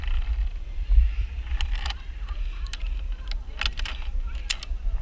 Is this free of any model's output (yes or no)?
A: yes